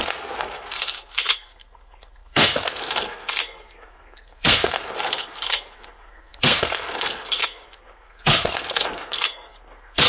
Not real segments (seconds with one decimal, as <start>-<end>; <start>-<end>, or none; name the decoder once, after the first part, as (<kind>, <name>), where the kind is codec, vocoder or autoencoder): 0.0-10.1 (codec, SNAC)